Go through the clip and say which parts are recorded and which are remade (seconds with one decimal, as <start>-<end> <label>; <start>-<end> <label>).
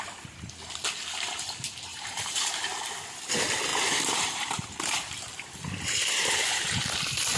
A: 0.0-1.9 recorded; 1.9-2.8 remade; 2.8-3.7 recorded; 3.7-6.7 remade; 6.7-7.4 recorded